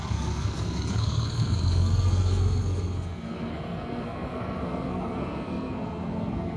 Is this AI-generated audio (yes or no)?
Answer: yes